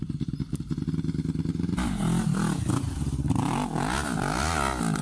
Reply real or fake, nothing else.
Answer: real